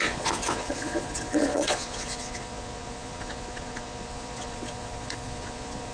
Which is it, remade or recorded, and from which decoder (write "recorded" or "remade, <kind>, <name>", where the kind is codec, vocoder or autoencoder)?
remade, vocoder, Vocos